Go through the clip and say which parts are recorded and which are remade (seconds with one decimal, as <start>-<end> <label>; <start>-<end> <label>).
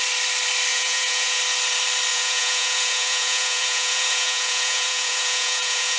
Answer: 0.0-0.7 recorded; 0.7-1.4 remade; 1.4-2.1 recorded; 2.1-6.0 remade